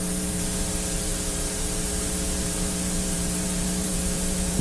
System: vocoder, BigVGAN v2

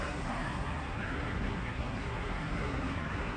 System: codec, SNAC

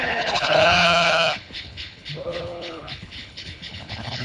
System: codec, HILCodec